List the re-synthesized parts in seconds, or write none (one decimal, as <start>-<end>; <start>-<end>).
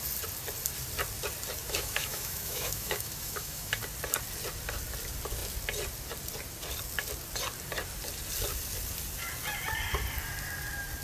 1.6-3.8